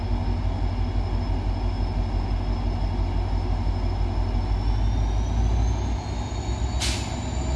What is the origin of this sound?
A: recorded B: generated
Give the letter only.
A